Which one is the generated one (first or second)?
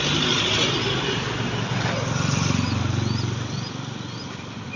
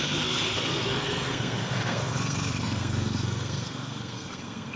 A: second